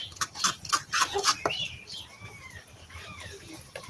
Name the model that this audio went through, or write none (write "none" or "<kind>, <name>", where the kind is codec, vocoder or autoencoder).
none